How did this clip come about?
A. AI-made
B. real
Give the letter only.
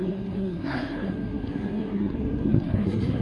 A